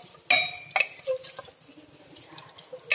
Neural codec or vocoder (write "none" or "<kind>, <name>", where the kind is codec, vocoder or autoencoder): none